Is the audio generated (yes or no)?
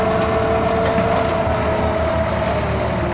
no